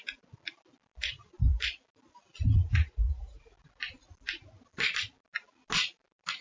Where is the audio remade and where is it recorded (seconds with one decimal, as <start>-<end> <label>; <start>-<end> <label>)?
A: 0.0-2.6 recorded; 2.6-3.5 remade; 3.5-6.4 recorded